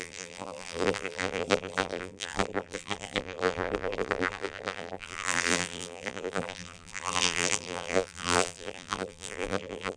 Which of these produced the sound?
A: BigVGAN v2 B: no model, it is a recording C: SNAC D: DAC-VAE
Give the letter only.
A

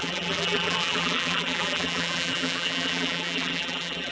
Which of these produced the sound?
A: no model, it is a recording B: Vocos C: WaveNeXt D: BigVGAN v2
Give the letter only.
D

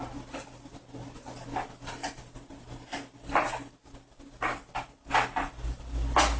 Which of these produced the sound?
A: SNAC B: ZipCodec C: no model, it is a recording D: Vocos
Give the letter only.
C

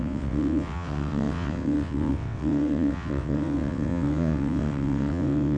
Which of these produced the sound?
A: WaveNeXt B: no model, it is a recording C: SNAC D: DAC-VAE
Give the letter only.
A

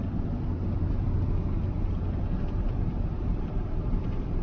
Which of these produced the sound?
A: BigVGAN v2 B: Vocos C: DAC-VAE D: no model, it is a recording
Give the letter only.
A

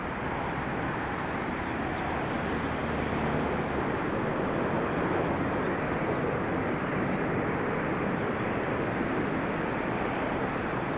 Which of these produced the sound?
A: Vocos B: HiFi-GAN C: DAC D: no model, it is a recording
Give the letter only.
D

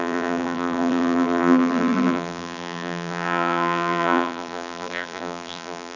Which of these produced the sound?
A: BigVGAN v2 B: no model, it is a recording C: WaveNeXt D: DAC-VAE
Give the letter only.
A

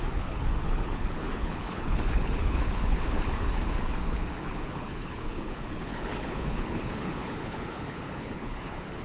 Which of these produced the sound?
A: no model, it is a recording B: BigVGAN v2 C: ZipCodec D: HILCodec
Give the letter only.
D